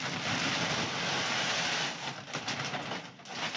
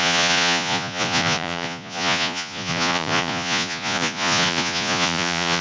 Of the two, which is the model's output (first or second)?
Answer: second